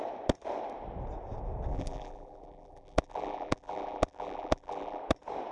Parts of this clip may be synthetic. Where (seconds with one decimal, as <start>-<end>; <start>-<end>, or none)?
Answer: 1.7-5.0